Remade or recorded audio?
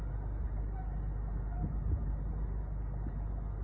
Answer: recorded